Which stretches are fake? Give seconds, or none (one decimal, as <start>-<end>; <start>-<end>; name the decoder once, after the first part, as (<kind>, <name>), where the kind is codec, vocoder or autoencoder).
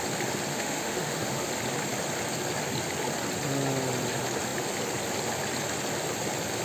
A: 0.5-1.5 (autoencoder, DAC-VAE)